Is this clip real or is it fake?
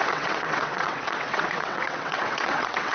fake